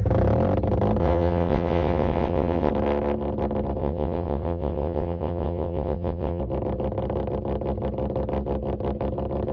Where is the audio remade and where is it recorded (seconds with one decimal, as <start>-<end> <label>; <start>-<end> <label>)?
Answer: 0.0-1.0 recorded; 1.0-2.7 remade; 2.7-3.8 recorded; 3.8-6.4 remade; 6.4-9.5 recorded